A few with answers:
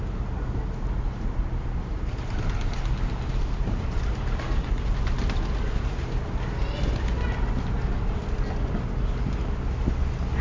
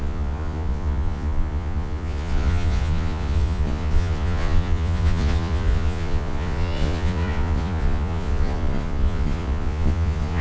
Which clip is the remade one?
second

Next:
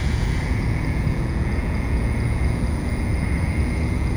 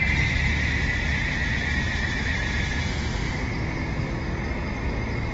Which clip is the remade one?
first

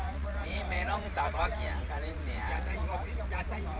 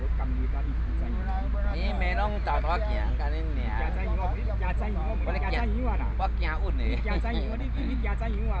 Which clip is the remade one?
first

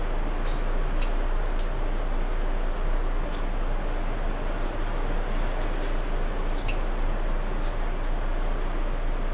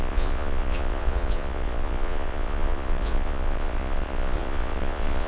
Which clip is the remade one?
second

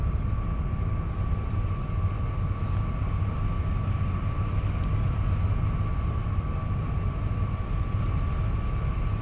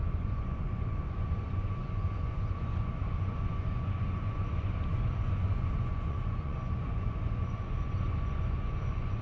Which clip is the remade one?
second